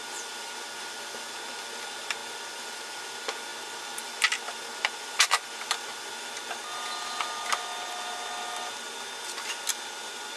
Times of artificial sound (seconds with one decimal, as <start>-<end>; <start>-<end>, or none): none